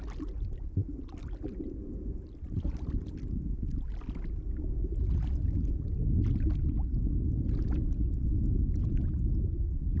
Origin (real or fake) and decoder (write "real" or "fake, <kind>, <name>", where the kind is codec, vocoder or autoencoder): real